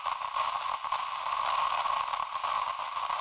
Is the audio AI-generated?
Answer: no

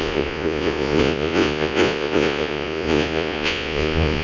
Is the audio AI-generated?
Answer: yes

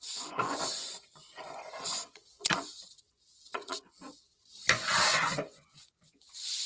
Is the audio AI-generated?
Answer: yes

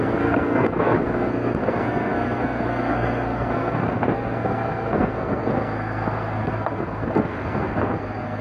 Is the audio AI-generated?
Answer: yes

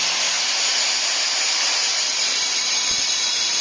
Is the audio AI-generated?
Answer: no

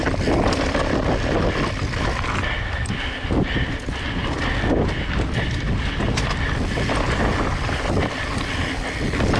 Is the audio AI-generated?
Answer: no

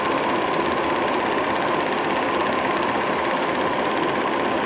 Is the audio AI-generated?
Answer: no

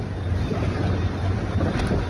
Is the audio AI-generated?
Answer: no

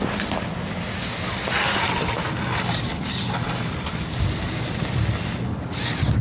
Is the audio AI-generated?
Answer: no